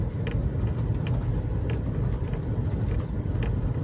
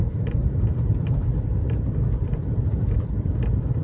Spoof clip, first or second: second